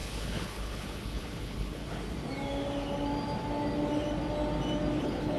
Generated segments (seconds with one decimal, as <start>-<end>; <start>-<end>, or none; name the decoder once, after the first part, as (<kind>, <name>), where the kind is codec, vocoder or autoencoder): 0.0-1.8 (codec, HILCodec); 5.0-5.4